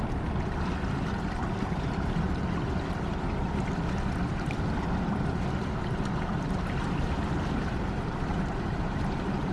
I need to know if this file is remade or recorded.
recorded